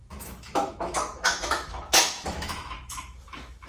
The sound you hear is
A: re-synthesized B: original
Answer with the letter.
A